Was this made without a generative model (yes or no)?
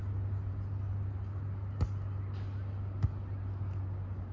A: yes